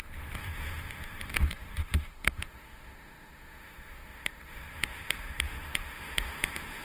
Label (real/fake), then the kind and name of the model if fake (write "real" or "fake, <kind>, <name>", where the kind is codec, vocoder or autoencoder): fake, autoencoder, DAC-VAE